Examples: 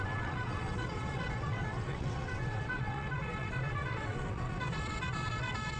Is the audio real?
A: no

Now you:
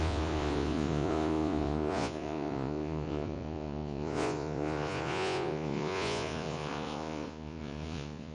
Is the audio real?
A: no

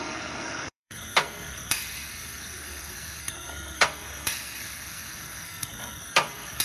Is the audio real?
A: no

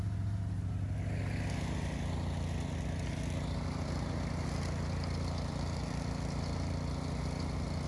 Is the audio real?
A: yes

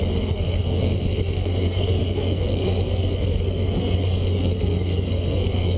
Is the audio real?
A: no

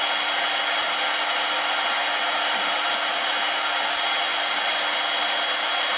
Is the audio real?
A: yes